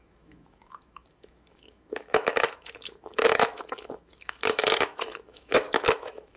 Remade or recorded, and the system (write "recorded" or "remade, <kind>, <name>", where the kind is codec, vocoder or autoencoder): remade, autoencoder, DAC-VAE